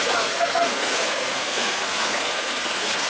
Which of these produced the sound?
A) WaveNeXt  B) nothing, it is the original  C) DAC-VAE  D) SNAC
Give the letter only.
D